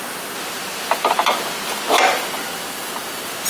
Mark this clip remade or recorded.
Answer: recorded